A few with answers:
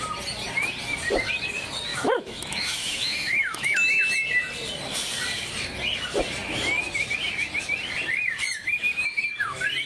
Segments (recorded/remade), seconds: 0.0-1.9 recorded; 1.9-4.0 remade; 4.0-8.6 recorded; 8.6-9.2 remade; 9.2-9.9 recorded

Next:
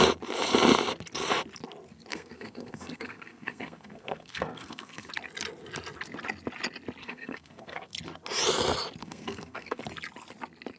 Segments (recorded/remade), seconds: 0.0-2.1 recorded; 2.1-5.1 remade; 5.1-7.0 recorded; 7.0-7.9 remade; 7.9-9.0 recorded; 9.0-9.8 remade; 9.8-10.8 recorded

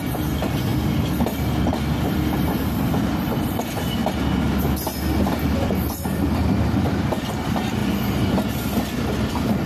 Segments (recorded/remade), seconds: 0.0-0.7 remade; 0.7-2.1 recorded; 2.1-4.0 remade; 4.0-5.6 recorded; 5.6-7.8 remade; 7.8-8.8 recorded; 8.8-9.7 remade

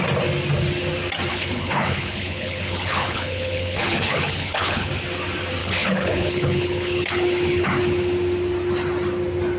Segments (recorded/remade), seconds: 0.0-1.3 recorded; 1.3-4.9 remade; 4.9-5.6 recorded; 5.6-7.8 remade; 7.8-9.6 recorded

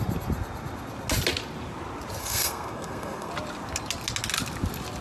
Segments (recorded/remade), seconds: 0.0-2.2 recorded; 2.2-3.3 remade; 3.3-5.0 recorded

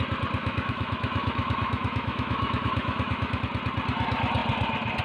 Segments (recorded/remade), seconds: 0.0-0.4 recorded; 0.4-3.4 remade; 3.4-5.0 recorded

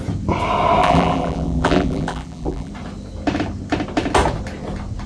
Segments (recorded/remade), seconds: 0.0-0.8 recorded; 0.8-2.7 remade; 2.7-5.1 recorded